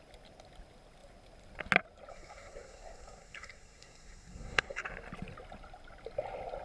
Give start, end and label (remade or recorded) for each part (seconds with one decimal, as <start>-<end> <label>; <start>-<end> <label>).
0.0-2.1 recorded; 2.1-4.8 remade; 4.8-6.6 recorded